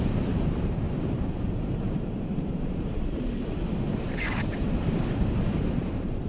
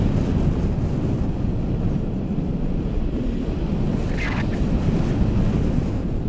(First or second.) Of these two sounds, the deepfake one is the first